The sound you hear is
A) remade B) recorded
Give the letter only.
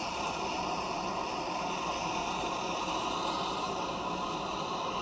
B